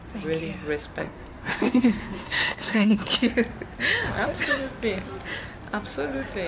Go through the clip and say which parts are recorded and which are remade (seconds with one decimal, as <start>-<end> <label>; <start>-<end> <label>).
0.0-1.0 recorded; 1.0-3.1 remade; 3.1-6.5 recorded